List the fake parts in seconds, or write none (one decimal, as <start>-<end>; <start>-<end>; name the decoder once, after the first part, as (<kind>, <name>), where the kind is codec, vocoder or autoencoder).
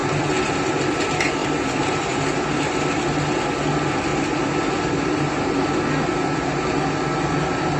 0.0-0.7 (vocoder, BigVGAN v2); 1.4-2.4